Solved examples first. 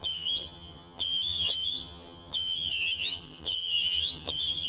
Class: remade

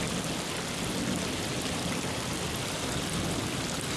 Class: recorded